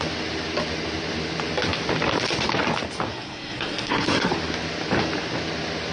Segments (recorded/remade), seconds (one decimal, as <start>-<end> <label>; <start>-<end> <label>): 0.0-3.1 recorded; 3.1-4.3 remade; 4.3-5.9 recorded